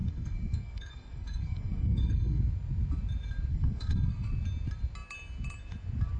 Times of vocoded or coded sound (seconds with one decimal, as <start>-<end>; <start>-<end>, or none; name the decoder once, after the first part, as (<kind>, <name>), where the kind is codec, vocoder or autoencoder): 0.0-2.4 (codec, SNAC); 3.5-4.3